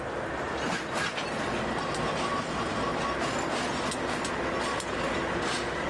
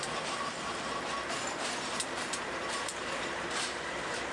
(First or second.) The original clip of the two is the first